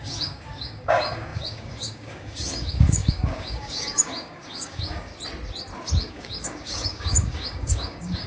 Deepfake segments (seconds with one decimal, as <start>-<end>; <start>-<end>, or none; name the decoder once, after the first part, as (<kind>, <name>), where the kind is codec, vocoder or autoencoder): 0.0-5.1 (codec, DAC); 6.1-8.3